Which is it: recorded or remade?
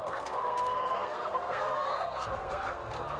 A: remade